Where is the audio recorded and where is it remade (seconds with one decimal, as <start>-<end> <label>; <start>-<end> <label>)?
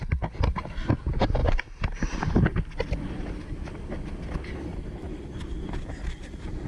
0.0-6.7 recorded